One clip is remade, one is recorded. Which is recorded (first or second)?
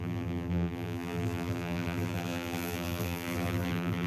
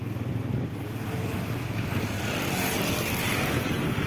second